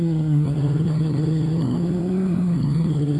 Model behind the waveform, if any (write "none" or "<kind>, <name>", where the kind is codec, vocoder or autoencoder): codec, SNAC